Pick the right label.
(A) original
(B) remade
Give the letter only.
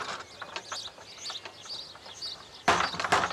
A